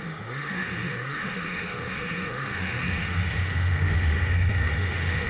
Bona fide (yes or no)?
no